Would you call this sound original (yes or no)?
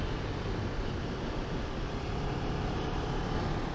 yes